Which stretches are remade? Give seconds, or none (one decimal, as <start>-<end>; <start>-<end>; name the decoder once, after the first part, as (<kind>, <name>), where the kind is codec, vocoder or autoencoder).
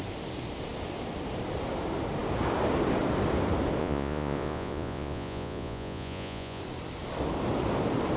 3.8-6.6 (vocoder, Vocos)